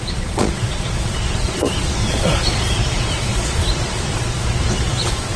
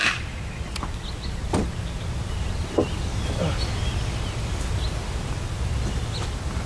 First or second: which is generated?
first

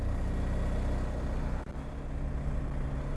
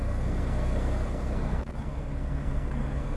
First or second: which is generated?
second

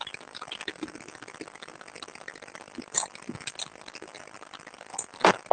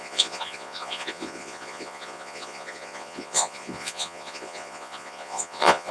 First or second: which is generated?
second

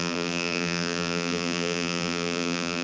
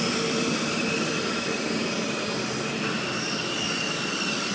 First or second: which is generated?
first